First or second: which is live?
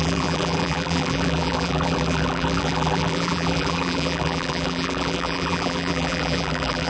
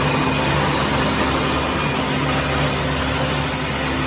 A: second